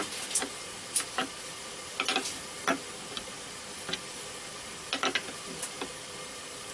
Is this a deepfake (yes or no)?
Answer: no